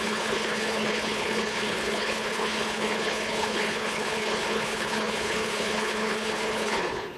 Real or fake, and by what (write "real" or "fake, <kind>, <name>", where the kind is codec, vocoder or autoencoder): fake, codec, HILCodec